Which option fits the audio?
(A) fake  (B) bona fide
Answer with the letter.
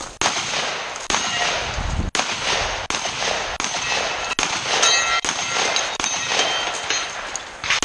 B